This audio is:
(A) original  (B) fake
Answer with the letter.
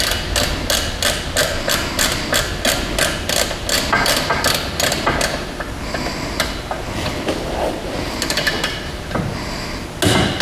A